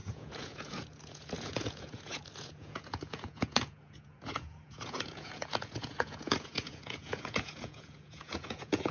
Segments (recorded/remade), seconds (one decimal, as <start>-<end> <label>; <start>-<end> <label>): 0.0-8.9 remade